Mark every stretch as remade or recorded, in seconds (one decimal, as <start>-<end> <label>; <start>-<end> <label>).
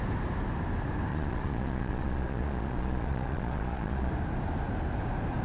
0.0-1.1 recorded; 1.1-4.1 remade; 4.1-5.4 recorded